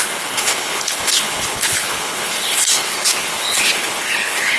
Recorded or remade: remade